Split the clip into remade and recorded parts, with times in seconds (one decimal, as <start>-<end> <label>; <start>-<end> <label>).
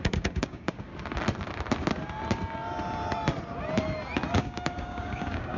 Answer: 0.0-0.9 remade; 0.9-4.3 recorded; 4.3-5.6 remade